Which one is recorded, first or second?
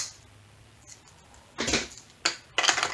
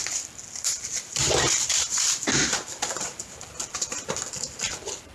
first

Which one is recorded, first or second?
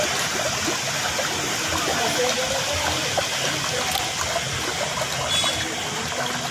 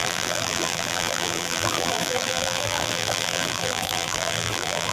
first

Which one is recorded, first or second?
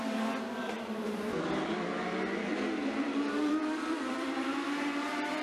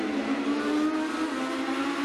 second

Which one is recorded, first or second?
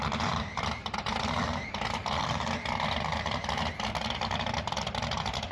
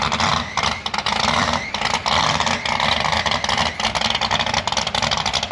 second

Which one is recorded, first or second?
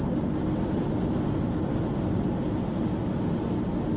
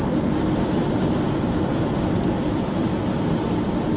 first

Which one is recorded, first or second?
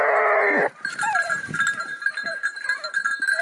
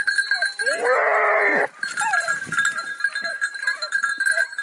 first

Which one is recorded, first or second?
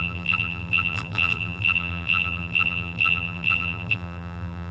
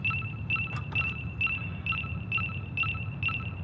second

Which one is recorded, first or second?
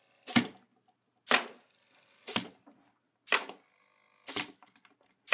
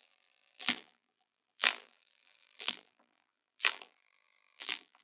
first